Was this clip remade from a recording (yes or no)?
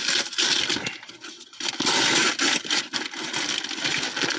no